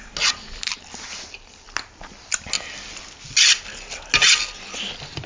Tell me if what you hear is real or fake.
real